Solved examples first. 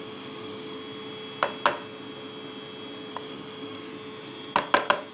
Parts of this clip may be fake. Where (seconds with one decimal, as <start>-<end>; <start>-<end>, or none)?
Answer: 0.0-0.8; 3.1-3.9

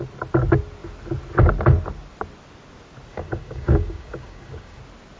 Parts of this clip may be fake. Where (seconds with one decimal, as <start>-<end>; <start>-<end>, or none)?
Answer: 3.1-4.8

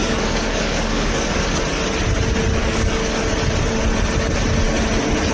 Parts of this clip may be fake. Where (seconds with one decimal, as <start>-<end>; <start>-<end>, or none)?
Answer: 0.0-1.6; 2.6-3.1